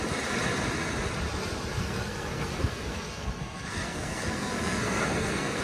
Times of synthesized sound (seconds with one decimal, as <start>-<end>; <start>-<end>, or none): 1.8-5.6